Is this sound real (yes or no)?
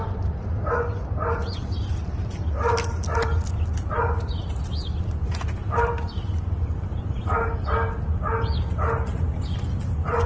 yes